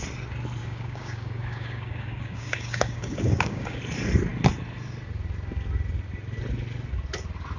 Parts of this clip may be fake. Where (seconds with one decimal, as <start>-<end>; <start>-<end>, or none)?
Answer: 0.6-3.8